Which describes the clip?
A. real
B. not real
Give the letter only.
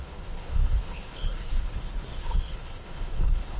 B